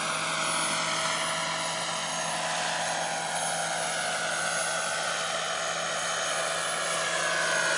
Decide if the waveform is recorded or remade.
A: recorded